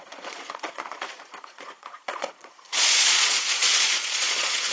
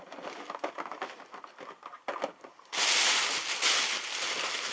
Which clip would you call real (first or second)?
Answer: second